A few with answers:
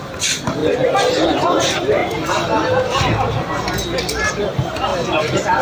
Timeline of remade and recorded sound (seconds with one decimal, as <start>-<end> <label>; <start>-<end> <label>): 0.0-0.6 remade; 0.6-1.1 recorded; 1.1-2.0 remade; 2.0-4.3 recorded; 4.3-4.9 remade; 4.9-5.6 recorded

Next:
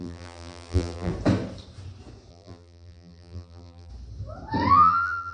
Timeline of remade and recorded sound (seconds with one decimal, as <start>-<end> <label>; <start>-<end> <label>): 0.0-1.1 remade; 1.1-2.3 recorded; 2.3-3.9 remade; 3.9-4.7 recorded; 4.7-5.3 remade

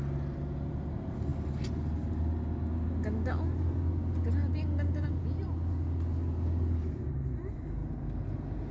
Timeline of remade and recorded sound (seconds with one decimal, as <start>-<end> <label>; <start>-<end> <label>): 0.0-8.7 recorded

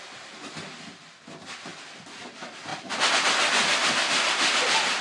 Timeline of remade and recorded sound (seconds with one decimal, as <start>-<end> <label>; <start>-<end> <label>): 0.0-1.7 remade; 1.7-2.3 recorded; 2.3-5.0 remade